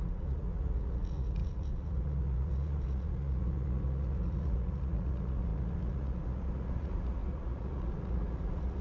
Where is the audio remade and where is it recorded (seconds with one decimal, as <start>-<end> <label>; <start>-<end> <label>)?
0.0-8.8 remade